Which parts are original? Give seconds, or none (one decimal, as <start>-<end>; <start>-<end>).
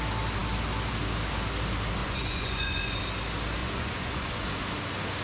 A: 0.0-2.0; 3.0-3.6; 4.5-5.2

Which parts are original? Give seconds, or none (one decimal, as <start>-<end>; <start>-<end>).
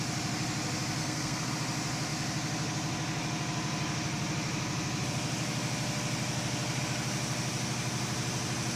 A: 0.0-1.0; 1.5-8.8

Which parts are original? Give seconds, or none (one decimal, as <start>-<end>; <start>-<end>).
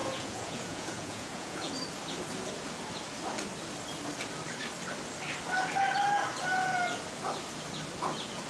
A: 1.7-8.5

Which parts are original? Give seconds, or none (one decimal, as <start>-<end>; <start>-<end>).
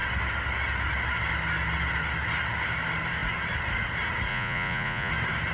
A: 0.0-4.3; 5.1-5.5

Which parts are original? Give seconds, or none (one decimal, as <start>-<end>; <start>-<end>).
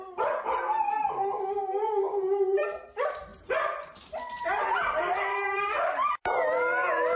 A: 3.3-4.4